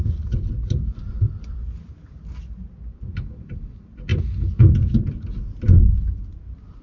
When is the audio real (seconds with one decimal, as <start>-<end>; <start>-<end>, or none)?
0.0-6.8